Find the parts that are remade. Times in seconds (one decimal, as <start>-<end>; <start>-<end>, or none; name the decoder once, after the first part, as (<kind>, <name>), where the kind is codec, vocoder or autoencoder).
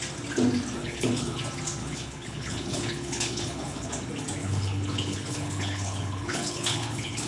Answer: 0.8-1.4 (codec, HILCodec); 1.8-3.9; 4.4-7.3